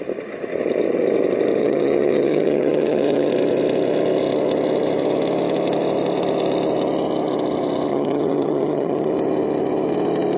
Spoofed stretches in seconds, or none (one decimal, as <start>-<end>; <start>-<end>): 1.6-3.3; 7.9-9.1